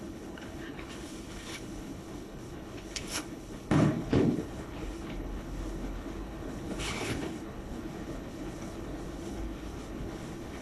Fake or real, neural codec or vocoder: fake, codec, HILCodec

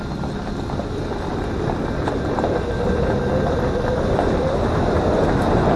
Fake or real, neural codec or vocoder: real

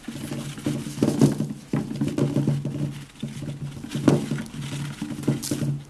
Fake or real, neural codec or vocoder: real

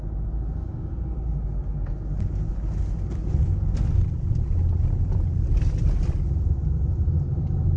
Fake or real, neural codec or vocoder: real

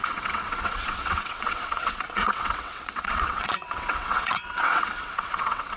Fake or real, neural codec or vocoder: fake, vocoder, WaveNeXt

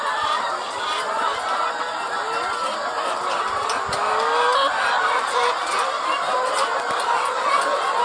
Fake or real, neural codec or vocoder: real